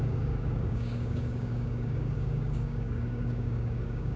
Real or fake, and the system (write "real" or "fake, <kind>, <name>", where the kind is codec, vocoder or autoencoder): fake, codec, DAC